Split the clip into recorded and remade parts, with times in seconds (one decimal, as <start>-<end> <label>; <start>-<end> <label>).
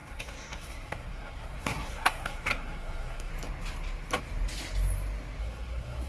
0.0-3.3 remade; 3.3-5.4 recorded; 5.4-6.1 remade